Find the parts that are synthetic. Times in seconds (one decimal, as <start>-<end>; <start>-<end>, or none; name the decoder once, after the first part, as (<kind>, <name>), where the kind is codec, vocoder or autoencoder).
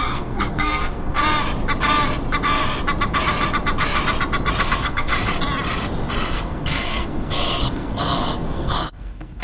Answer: 0.0-1.2 (codec, SNAC); 4.6-5.1; 6.3-9.4